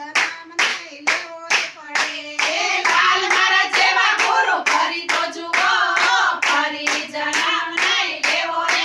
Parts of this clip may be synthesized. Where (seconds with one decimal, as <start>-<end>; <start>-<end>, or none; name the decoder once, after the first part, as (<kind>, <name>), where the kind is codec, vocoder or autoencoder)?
0.7-3.4 (autoencoder, DAC-VAE); 4.4-4.9